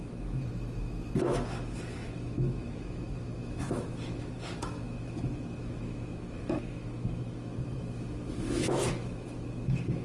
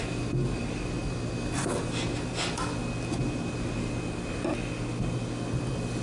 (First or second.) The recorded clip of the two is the second